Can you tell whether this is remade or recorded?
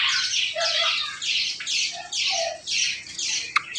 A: recorded